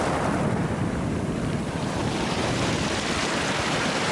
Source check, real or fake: fake